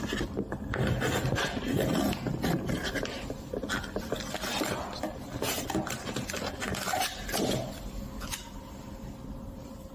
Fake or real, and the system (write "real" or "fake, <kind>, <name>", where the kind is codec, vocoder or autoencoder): real